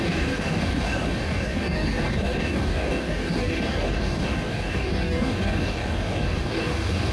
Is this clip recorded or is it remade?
remade